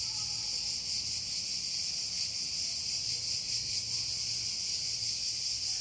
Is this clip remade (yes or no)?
no